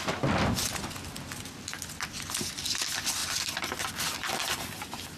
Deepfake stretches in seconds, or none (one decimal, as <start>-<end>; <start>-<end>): none

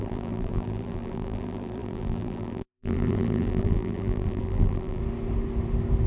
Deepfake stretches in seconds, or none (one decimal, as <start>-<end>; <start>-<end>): 0.0-5.0